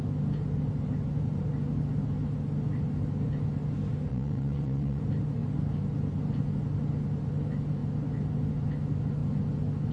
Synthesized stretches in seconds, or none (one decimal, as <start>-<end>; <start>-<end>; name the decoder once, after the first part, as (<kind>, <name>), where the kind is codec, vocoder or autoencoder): 4.1-5.0 (vocoder, WaveNeXt)